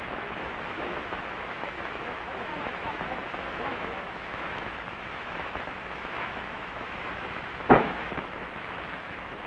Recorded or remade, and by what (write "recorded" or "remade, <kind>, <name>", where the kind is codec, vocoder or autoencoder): remade, autoencoder, DAC-VAE